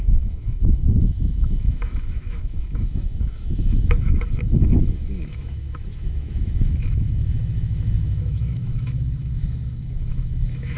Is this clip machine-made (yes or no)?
yes